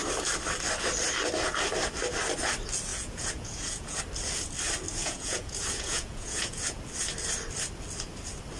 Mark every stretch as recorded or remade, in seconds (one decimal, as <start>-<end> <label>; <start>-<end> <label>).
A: 0.0-2.9 recorded; 2.9-4.0 remade; 4.0-5.0 recorded; 5.0-6.8 remade; 6.8-8.6 recorded